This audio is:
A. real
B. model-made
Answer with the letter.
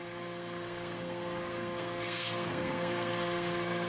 B